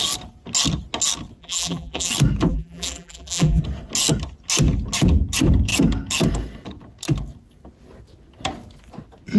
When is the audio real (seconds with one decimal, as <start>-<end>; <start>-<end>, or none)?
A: 0.0-1.4; 2.1-2.5; 3.6-9.4